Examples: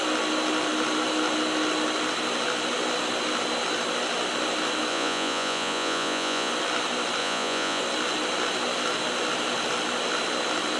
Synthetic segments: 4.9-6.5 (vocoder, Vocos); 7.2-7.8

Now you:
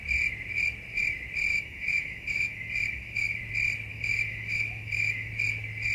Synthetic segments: 1.5-3.4 (autoencoder, DAC-VAE); 3.9-5.3

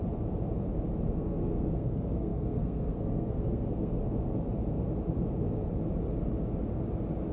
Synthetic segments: 1.1-4.0 (codec, SNAC)

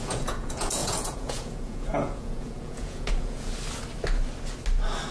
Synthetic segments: 0.0-3.5 (vocoder, Vocos)

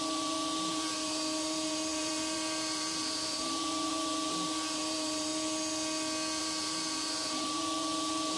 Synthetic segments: 0.0-5.3 (vocoder, BigVGAN v2); 6.4-8.4